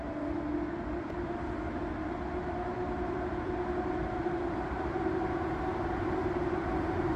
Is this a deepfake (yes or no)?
yes